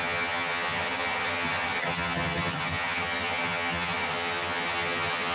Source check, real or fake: fake